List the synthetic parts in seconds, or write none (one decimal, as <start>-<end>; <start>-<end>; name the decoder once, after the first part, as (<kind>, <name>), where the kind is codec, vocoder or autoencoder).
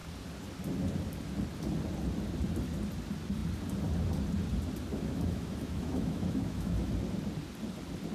4.9-6.9 (autoencoder, DAC-VAE)